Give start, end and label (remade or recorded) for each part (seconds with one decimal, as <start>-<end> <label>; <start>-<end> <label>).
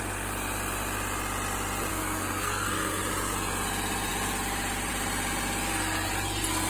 0.0-1.9 recorded; 1.9-3.0 remade; 3.0-6.7 recorded